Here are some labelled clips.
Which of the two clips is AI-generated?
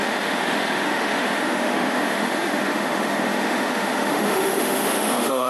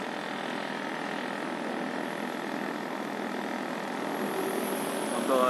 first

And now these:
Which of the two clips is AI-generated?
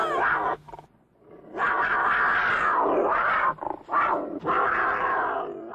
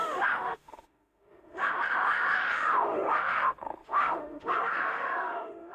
second